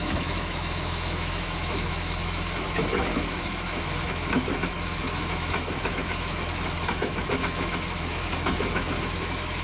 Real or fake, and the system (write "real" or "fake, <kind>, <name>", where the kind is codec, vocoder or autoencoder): fake, autoencoder, DAC-VAE